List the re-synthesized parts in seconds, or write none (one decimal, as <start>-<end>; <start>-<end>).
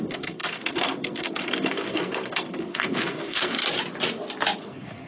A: 0.0-3.6; 4.6-5.1